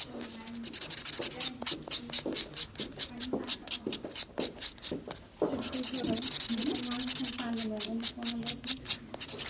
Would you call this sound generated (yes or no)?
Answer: no